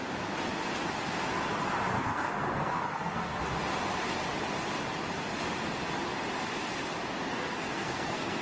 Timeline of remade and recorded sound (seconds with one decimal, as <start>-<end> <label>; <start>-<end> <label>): 0.0-1.9 recorded; 1.9-3.4 remade; 3.4-7.3 recorded; 7.3-8.4 remade